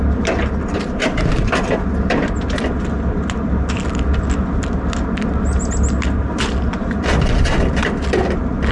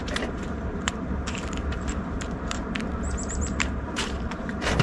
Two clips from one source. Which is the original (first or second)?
first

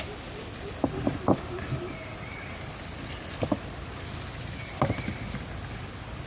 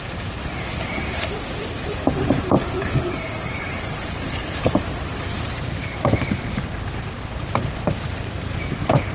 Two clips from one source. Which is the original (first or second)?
first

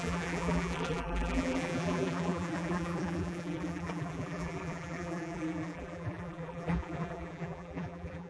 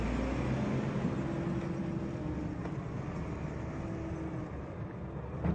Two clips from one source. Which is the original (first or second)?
second